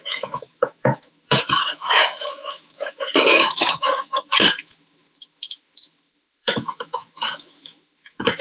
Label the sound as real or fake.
fake